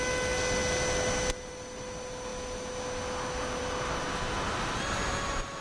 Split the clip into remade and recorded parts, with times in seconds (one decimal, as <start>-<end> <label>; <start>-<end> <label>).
0.0-5.6 recorded